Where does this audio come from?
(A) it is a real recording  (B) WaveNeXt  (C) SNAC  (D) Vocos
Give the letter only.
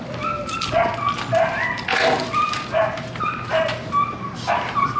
A